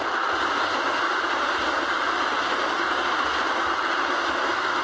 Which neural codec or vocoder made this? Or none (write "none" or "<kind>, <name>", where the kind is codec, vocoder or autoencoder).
none